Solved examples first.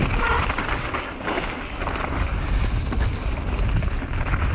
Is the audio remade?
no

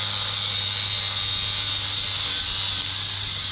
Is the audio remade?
no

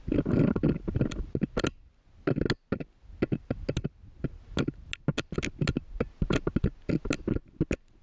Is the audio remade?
no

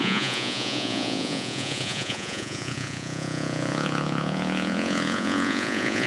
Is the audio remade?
yes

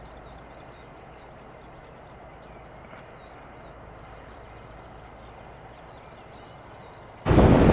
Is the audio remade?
no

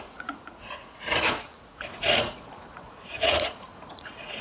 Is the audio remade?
yes